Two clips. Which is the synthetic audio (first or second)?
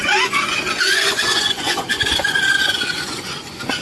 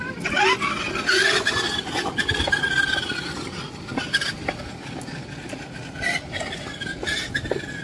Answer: first